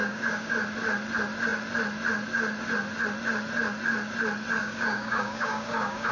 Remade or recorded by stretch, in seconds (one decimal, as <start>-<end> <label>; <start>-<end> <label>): 0.0-0.5 remade; 0.5-4.6 recorded; 4.6-6.1 remade